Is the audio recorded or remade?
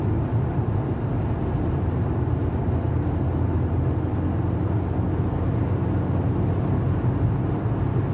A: recorded